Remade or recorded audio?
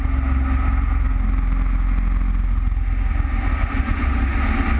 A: recorded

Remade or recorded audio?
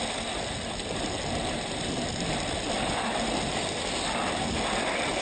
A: recorded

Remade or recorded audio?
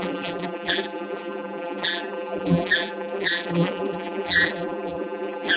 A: remade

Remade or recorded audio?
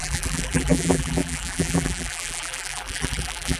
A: remade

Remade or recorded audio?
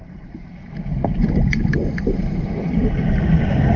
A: recorded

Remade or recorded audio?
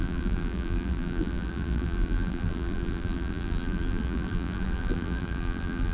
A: remade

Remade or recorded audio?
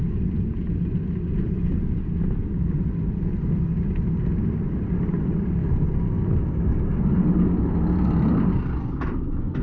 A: recorded